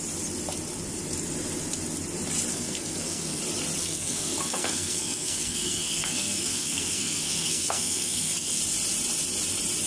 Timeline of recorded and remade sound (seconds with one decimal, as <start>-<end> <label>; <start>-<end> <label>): 0.0-2.5 recorded; 2.5-3.4 remade; 3.4-3.8 recorded; 3.8-8.6 remade; 8.6-9.9 recorded